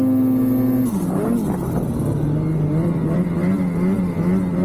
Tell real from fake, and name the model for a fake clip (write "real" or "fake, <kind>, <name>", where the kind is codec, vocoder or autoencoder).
real